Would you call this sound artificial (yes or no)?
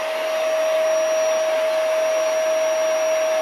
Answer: no